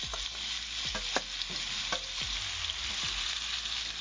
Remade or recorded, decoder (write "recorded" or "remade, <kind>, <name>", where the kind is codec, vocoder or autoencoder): recorded